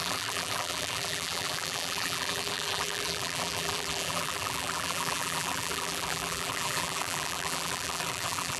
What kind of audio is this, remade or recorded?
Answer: remade